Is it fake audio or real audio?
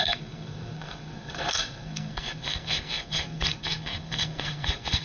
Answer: fake